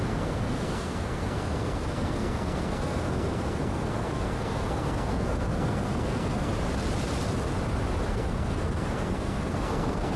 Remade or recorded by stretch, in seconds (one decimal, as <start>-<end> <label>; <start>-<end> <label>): 0.0-6.5 remade; 6.5-8.1 recorded; 8.1-10.2 remade